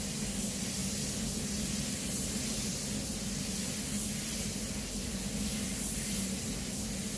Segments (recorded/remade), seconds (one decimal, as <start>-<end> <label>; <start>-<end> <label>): 0.0-7.2 recorded